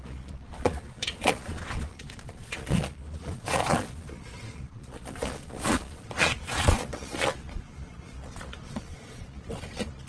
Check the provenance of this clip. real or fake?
fake